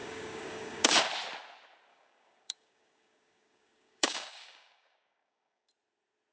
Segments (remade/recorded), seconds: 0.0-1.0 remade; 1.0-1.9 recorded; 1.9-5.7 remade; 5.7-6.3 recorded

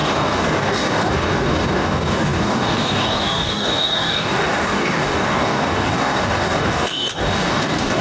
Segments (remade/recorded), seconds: 0.0-8.0 remade